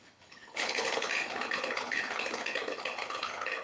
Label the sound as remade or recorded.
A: remade